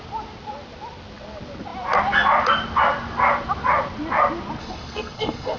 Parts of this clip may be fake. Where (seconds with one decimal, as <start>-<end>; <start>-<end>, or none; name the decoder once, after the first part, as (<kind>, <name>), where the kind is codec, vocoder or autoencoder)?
4.6-5.6 (codec, SNAC)